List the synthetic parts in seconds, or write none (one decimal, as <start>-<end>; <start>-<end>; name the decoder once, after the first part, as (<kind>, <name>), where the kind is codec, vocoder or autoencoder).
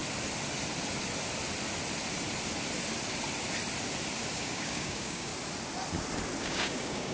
4.3-5.3 (codec, DAC); 6.4-7.1